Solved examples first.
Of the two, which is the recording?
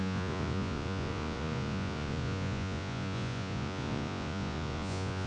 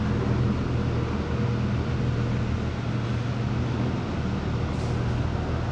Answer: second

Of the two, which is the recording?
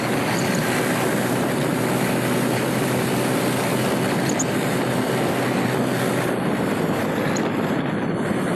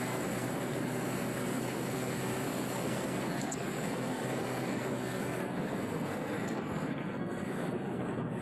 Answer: first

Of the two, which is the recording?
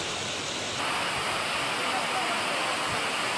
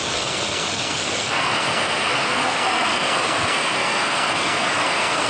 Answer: first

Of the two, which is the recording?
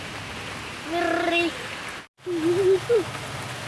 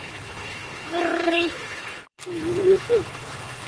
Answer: first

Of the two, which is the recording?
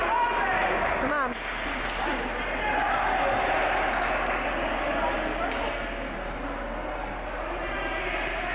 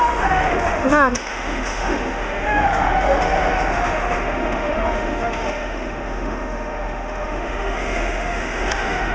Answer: first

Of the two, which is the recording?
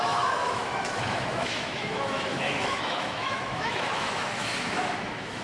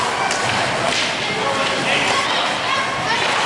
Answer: second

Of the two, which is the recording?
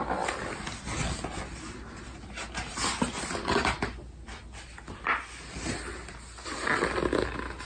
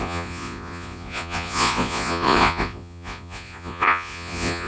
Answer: first